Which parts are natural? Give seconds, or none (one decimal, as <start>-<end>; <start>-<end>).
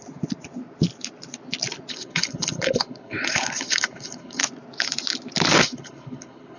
0.0-1.9; 4.4-5.5